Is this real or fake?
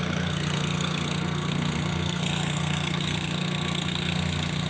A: fake